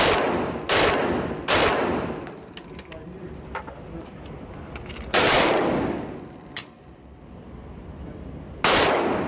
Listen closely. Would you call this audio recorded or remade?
recorded